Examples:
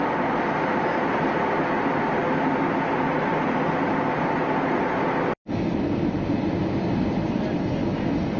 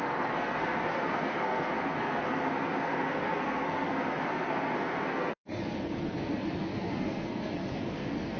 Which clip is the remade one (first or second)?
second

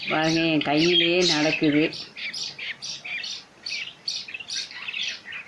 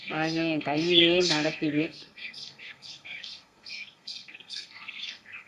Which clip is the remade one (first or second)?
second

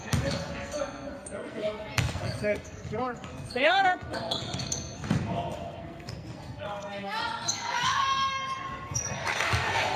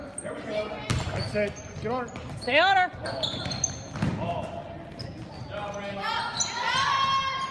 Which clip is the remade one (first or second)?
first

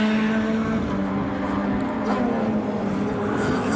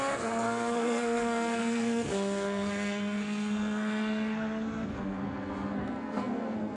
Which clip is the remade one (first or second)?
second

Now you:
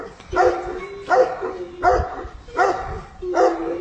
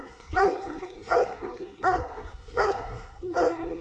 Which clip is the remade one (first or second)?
second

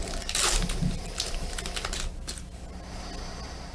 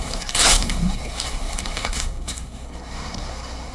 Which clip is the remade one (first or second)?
second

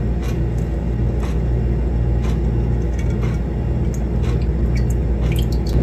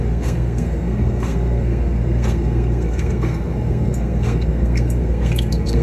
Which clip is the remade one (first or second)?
second